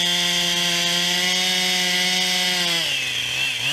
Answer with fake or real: real